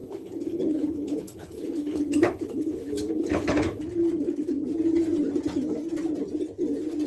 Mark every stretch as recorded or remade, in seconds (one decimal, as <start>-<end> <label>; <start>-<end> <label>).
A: 0.0-3.8 remade; 3.8-7.1 recorded